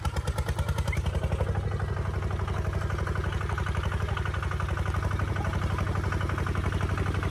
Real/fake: real